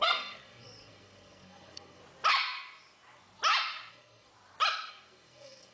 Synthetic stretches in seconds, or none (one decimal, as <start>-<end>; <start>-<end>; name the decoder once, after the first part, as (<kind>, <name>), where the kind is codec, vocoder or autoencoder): 0.0-2.0 (codec, SNAC); 3.9-4.3; 4.9-5.7